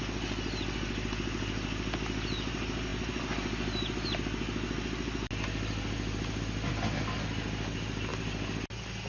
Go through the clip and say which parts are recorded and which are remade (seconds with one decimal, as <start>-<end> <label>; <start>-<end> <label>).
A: 0.0-9.1 recorded